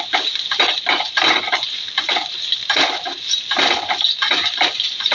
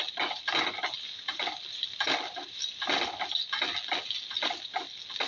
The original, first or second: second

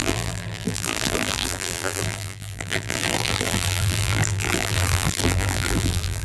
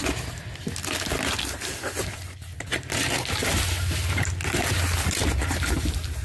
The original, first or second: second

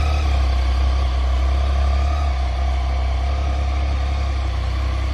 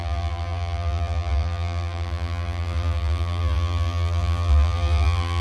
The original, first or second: first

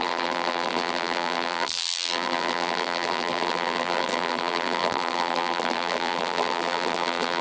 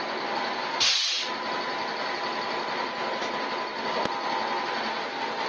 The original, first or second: second